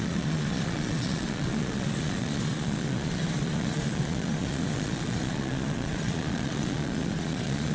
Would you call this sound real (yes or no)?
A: no